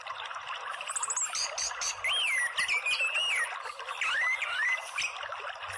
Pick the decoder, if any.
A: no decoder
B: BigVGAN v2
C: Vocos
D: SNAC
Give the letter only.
A